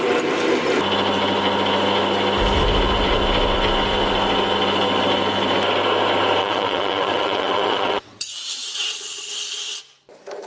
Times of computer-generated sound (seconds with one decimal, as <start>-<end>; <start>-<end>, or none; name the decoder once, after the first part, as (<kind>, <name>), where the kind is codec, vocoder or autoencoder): 6.4-9.3 (vocoder, WaveNeXt)